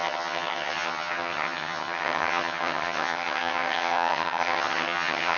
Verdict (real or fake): fake